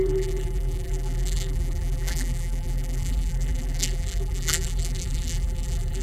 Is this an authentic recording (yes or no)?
no